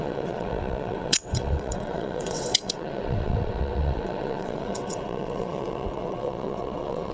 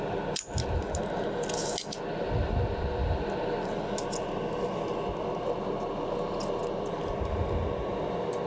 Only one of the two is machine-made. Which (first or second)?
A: first